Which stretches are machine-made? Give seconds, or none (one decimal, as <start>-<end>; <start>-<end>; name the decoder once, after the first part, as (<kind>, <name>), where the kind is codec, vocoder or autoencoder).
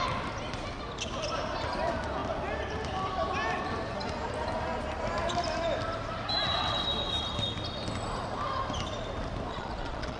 9.5-10.2 (vocoder, Vocos)